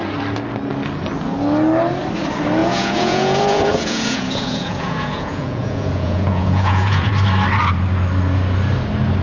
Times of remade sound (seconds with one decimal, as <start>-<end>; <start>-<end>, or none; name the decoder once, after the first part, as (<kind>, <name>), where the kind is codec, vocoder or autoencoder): 2.6-7.1 (vocoder, Vocos)